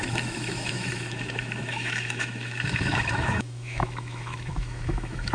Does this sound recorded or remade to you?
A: remade